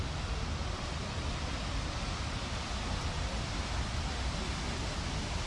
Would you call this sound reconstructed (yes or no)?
no